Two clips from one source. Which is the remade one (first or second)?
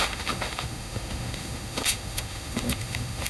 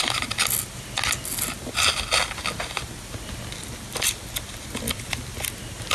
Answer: first